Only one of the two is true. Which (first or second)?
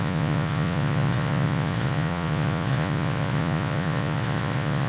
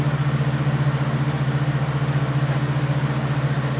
second